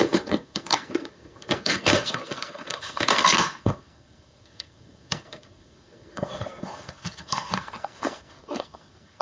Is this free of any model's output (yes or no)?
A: no